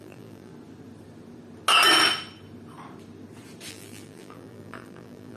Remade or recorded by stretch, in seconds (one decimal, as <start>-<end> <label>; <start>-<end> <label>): 0.0-0.5 remade; 0.5-3.7 recorded; 3.7-5.4 remade